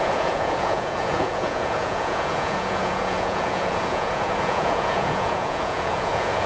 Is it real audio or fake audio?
fake